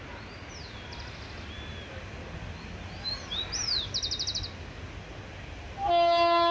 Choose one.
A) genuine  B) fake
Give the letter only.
A